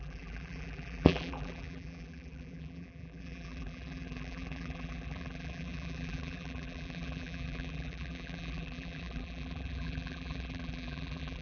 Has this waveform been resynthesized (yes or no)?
yes